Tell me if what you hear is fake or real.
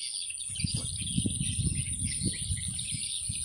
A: real